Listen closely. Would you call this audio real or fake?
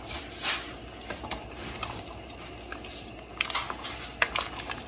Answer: real